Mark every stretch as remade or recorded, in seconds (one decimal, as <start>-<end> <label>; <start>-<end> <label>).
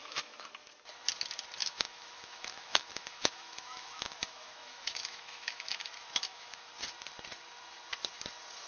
0.0-0.5 remade; 0.5-1.6 recorded; 1.6-6.7 remade; 6.7-8.7 recorded